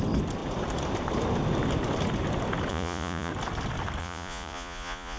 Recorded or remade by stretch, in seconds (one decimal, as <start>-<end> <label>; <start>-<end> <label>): 0.0-2.7 recorded; 2.7-3.3 remade; 3.3-4.0 recorded; 4.0-5.2 remade